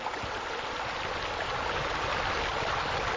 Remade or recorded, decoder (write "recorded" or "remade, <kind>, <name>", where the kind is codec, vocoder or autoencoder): recorded